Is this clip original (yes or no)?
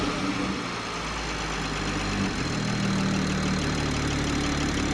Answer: yes